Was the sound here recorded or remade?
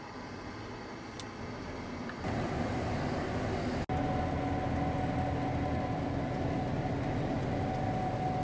recorded